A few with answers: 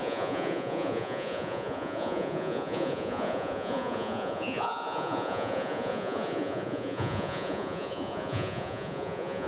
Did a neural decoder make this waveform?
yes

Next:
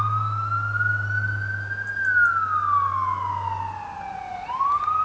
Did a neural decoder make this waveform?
no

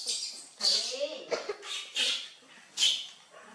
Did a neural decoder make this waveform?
no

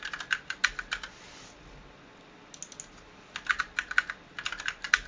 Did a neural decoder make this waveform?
no